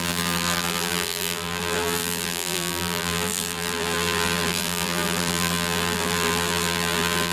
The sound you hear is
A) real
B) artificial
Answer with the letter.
B